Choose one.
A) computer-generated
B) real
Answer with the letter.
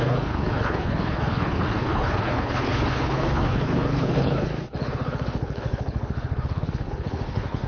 A